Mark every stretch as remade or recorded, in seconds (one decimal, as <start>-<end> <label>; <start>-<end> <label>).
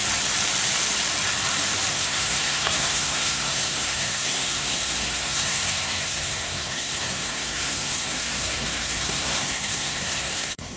0.0-1.9 recorded; 1.9-10.8 remade